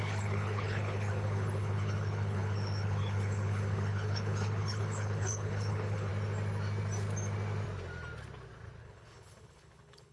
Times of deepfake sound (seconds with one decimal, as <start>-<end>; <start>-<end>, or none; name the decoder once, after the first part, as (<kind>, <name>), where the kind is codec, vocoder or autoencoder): 0.0-6.1 (codec, HILCodec); 8.8-10.1